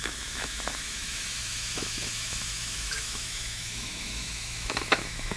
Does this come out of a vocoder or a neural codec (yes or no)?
yes